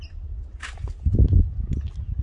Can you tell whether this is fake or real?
real